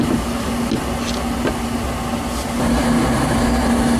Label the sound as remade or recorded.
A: recorded